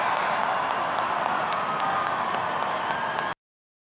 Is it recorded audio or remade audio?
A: recorded